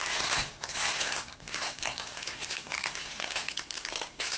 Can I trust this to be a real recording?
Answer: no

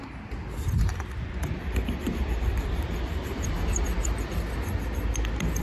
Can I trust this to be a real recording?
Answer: yes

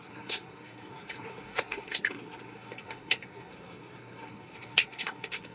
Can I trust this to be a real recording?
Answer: no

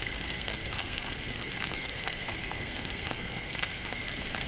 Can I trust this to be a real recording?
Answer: no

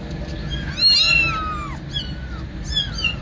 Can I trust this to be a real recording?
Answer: yes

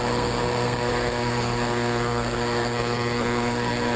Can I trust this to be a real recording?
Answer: no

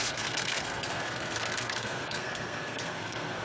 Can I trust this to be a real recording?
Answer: no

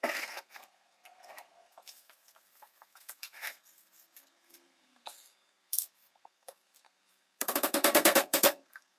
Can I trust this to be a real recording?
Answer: no